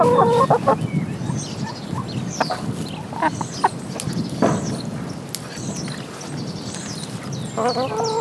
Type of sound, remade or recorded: recorded